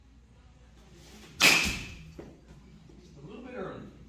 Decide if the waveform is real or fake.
real